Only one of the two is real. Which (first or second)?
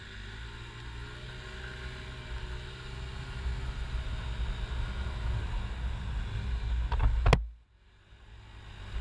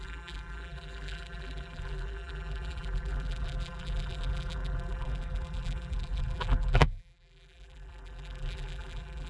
first